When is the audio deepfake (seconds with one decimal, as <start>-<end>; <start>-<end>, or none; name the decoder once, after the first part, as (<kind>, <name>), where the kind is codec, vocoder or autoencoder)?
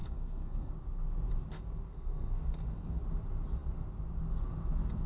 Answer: 0.0-0.7 (codec, SNAC); 1.5-3.0